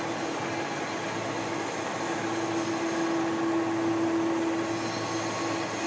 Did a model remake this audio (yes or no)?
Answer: no